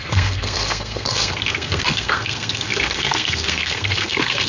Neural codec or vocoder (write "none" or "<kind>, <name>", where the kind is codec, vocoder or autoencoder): codec, SNAC